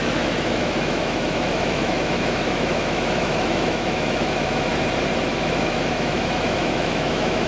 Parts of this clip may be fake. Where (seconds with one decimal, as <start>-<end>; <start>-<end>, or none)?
0.0-4.7; 5.3-7.5